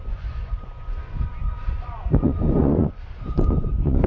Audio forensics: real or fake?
fake